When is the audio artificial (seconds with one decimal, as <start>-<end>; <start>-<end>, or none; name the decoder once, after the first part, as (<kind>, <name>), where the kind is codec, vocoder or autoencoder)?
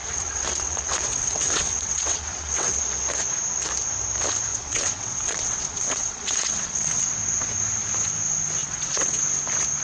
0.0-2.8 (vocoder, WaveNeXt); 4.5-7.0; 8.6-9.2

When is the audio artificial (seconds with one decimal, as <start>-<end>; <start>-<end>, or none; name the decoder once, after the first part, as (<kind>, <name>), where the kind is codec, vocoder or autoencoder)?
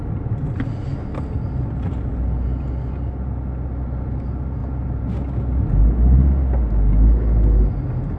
none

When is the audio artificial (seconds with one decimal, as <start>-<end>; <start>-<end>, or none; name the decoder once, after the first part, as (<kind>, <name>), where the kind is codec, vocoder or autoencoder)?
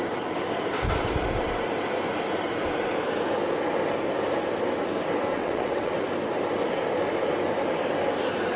5.3-5.9 (vocoder, WaveNeXt)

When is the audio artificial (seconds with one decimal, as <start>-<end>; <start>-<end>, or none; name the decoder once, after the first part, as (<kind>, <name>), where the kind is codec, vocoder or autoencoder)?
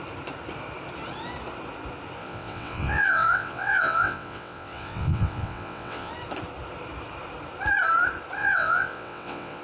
2.2-6.1 (vocoder, WaveNeXt); 8.4-9.6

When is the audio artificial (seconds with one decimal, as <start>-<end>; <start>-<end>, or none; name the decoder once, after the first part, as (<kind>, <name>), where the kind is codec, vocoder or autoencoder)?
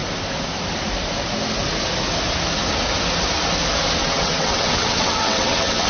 4.0-5.9 (vocoder, WaveNeXt)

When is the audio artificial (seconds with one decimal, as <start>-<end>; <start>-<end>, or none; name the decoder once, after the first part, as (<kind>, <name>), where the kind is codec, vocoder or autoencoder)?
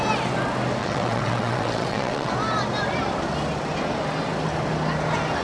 0.8-2.3 (vocoder, WaveNeXt)